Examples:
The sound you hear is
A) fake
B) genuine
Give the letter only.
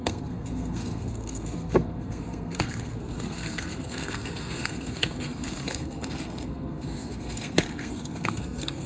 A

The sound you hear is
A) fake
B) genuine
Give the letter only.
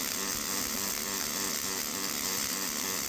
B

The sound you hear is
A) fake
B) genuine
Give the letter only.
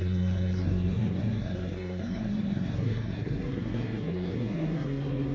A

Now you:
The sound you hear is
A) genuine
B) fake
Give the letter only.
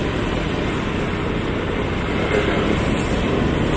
A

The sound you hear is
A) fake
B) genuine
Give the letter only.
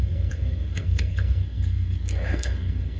A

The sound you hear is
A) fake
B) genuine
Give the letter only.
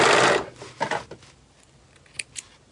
B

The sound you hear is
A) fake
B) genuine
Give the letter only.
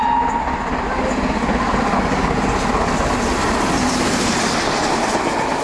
B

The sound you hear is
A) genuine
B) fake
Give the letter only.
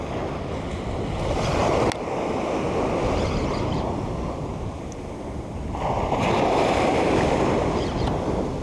A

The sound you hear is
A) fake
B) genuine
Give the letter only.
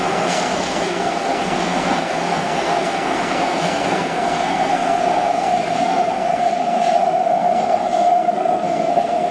A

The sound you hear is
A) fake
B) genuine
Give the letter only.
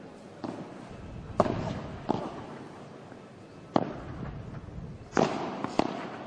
B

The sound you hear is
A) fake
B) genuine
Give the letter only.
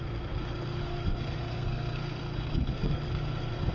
A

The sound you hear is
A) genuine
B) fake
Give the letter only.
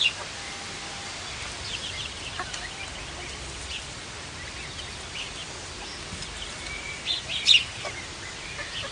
A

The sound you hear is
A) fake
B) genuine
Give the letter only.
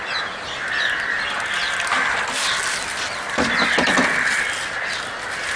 B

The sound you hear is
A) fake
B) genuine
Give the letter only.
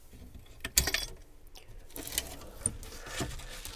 B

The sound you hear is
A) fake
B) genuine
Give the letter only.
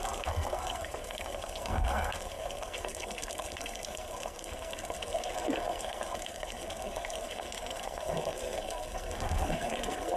A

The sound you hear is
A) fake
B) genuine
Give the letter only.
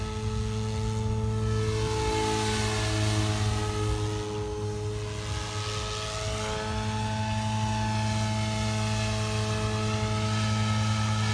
B